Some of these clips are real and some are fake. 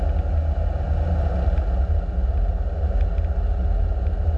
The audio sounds real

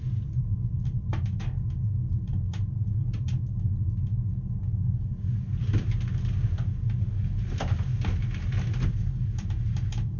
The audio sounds real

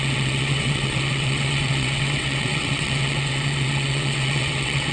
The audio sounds fake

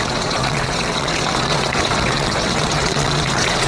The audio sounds fake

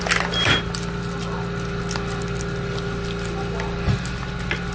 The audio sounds real